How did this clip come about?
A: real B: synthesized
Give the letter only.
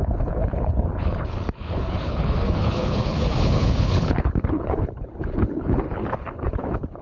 B